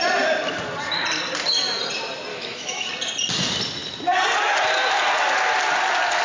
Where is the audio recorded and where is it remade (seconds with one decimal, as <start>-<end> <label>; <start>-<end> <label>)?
0.0-2.3 recorded; 2.3-2.9 remade; 2.9-6.2 recorded